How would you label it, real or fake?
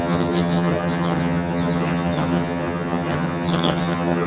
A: fake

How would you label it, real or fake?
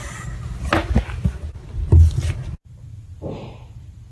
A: real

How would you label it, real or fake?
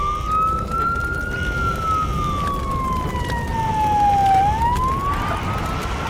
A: real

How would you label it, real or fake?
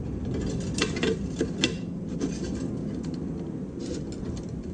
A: real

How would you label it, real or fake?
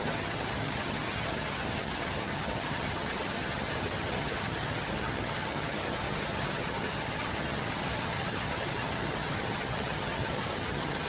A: fake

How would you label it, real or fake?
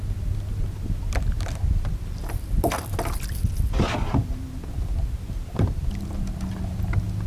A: real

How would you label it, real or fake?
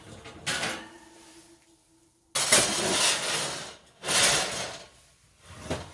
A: real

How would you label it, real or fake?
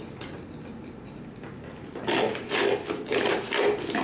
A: real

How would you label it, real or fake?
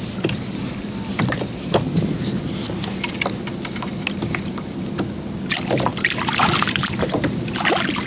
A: real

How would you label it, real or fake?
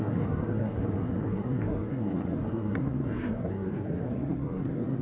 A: fake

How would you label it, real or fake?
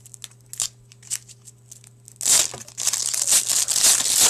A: real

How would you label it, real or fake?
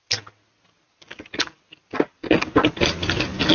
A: real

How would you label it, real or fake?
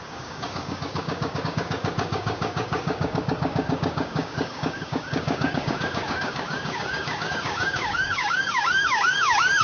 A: fake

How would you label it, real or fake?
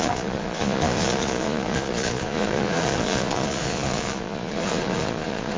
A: fake